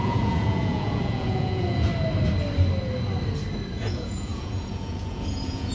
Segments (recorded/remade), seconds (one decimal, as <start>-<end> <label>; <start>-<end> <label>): 0.0-1.9 remade; 1.9-3.8 recorded; 3.8-5.7 remade